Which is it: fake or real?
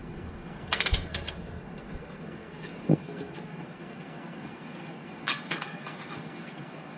fake